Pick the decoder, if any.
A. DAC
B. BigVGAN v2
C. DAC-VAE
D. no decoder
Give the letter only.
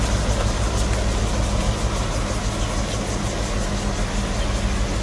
D